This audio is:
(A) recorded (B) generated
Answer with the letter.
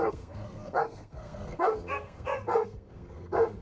B